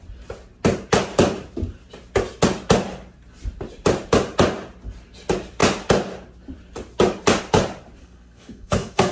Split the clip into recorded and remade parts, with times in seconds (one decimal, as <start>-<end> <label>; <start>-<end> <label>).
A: 0.0-8.0 recorded; 8.0-9.1 remade